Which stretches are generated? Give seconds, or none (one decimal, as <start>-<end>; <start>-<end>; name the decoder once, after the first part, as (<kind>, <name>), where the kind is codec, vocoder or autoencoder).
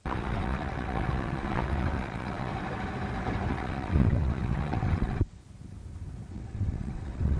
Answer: 0.0-2.5 (vocoder, WaveNeXt); 3.5-5.4; 6.3-7.4